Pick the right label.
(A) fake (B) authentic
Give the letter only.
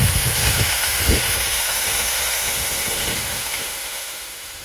A